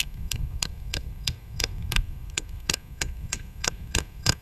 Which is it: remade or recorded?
remade